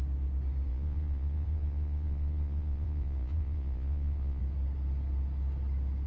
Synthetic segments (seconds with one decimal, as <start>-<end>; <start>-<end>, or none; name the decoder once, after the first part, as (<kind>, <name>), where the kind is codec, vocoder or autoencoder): 0.7-4.4 (vocoder, Vocos)